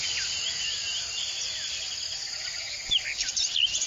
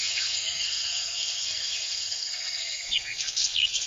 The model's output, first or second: second